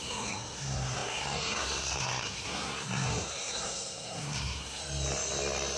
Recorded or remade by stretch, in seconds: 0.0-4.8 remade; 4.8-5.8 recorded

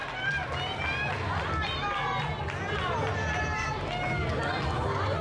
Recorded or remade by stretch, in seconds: 0.0-5.2 recorded

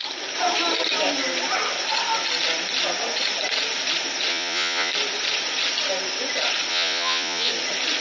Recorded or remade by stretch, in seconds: 0.0-4.3 recorded; 4.3-4.9 remade; 4.9-6.7 recorded; 6.7-7.5 remade; 7.5-8.0 recorded

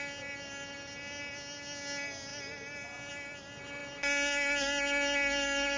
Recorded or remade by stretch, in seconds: 0.0-5.8 recorded

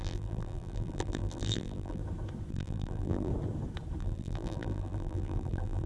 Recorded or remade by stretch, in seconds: 0.0-2.0 remade; 2.0-2.5 recorded; 2.5-3.3 remade; 3.3-4.0 recorded; 4.0-5.9 remade

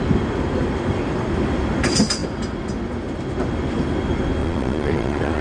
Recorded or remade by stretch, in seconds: 0.0-4.4 recorded; 4.4-5.4 remade

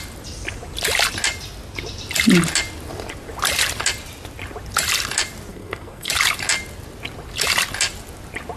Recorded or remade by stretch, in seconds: 0.0-5.5 recorded; 5.5-6.1 remade; 6.1-8.6 recorded